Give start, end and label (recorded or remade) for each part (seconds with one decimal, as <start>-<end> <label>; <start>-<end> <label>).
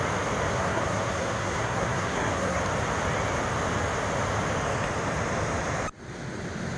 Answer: 0.0-0.5 recorded; 0.5-2.6 remade; 2.6-6.8 recorded